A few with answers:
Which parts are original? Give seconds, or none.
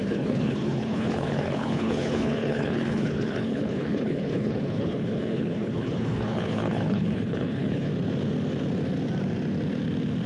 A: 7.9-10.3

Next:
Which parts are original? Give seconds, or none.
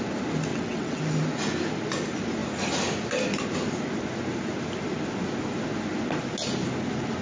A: 0.0-0.5; 1.0-7.2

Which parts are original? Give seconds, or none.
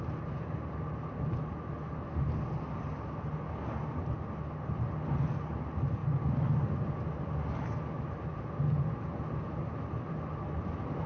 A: 0.0-11.1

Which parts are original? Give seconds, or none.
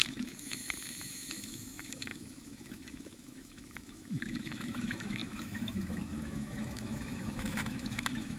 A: none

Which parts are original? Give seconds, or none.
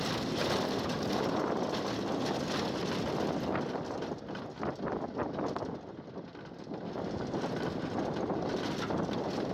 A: 0.0-9.5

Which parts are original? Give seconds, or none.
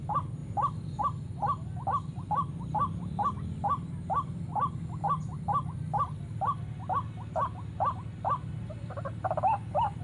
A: 0.0-10.0